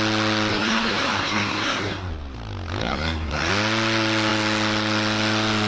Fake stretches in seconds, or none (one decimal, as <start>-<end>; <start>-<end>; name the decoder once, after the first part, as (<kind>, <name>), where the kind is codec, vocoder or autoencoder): 0.5-2.1 (codec, SNAC); 2.8-3.5